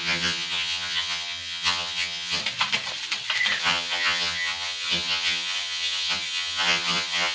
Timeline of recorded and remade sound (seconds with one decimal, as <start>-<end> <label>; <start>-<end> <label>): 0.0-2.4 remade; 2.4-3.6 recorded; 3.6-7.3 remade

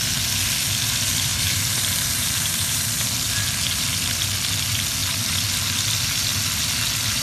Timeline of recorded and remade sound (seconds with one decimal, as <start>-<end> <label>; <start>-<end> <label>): 0.0-1.3 recorded; 1.3-2.8 remade; 2.8-7.2 recorded

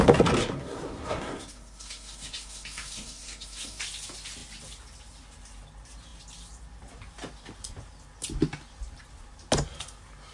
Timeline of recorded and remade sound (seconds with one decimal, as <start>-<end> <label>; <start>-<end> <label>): 0.0-0.4 recorded; 0.4-3.8 remade; 3.8-10.3 recorded

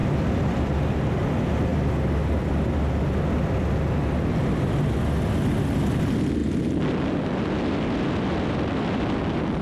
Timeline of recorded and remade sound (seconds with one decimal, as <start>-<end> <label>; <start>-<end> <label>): 0.0-0.9 remade; 0.9-1.7 recorded; 1.7-2.7 remade; 2.7-9.6 recorded

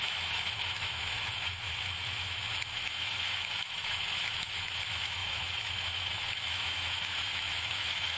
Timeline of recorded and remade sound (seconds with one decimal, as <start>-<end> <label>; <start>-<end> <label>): 0.0-8.2 remade

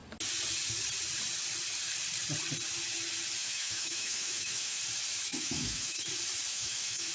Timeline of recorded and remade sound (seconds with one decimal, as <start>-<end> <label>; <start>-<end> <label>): 0.0-3.4 recorded; 3.4-4.8 remade; 4.8-5.3 recorded; 5.3-6.1 remade; 6.1-6.5 recorded; 6.5-7.1 remade

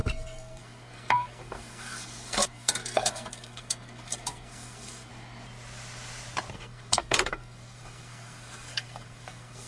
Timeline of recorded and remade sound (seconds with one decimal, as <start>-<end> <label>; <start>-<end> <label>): 0.0-5.1 remade; 5.1-6.5 recorded; 6.5-9.7 remade

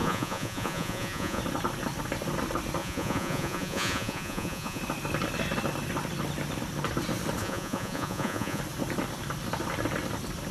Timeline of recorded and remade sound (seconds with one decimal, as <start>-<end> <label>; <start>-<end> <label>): 0.0-1.4 remade; 1.4-2.8 recorded; 2.8-4.8 remade; 4.8-7.4 recorded; 7.4-8.6 remade; 8.6-10.5 recorded